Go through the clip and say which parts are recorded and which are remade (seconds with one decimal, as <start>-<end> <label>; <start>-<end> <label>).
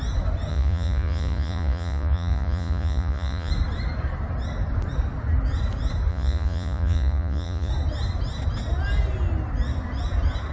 0.0-0.5 recorded; 0.5-3.5 remade; 3.5-6.1 recorded; 6.1-7.7 remade; 7.7-10.5 recorded